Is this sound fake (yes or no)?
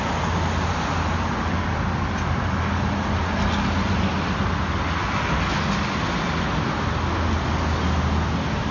no